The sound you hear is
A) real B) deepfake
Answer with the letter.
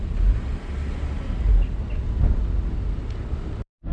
A